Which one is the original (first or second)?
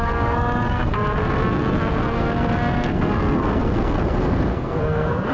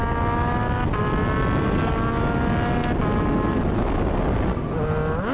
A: second